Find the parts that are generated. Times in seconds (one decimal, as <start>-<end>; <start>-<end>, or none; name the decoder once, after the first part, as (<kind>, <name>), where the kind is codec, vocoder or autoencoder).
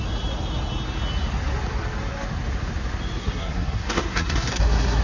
3.2-5.0 (codec, SNAC)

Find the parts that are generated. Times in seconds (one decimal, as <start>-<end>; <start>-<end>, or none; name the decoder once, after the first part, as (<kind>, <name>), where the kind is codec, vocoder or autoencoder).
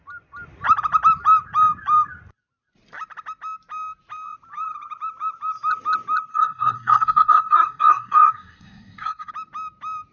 6.3-9.3 (codec, SNAC)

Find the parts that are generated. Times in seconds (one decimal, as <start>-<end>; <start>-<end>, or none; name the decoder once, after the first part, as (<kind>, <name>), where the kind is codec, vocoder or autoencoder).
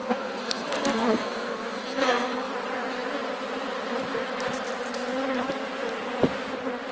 0.0-2.5 (codec, SNAC)